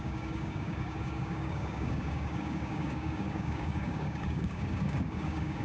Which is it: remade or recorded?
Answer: remade